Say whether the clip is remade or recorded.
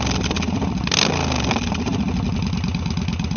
recorded